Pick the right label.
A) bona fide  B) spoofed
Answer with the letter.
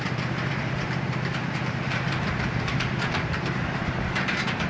B